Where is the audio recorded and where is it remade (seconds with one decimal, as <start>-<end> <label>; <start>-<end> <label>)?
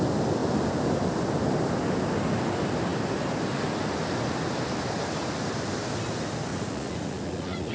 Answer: 0.0-6.5 recorded; 6.5-7.7 remade